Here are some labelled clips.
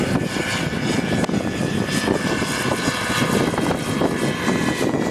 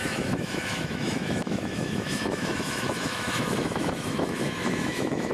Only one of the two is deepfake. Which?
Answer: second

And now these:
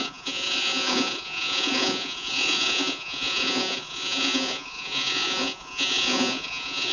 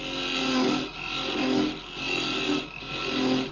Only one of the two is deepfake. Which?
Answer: first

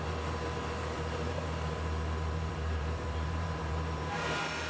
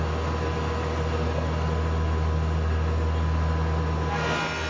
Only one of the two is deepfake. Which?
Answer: first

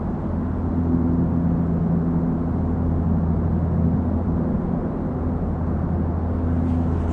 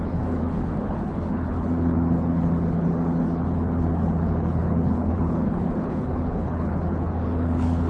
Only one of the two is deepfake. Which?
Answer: second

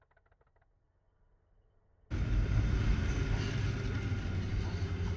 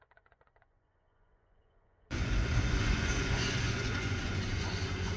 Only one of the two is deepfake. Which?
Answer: second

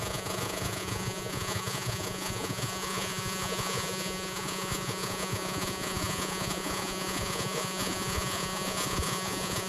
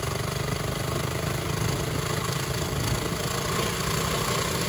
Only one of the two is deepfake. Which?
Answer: first